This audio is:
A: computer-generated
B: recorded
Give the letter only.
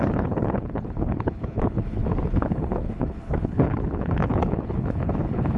A